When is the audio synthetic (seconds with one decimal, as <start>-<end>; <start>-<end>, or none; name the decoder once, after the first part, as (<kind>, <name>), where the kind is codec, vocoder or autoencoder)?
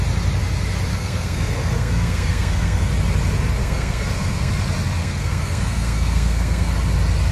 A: 0.9-2.9 (codec, SNAC); 3.6-4.5; 5.0-6.7